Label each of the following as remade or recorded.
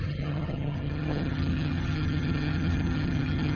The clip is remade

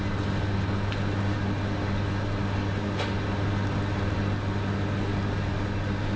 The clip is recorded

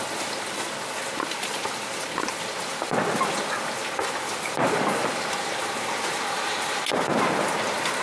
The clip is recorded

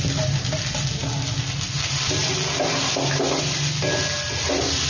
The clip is recorded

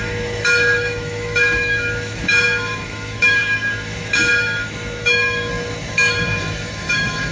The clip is remade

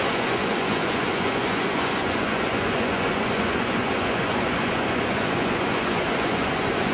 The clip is remade